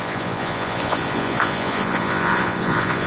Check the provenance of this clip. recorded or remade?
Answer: remade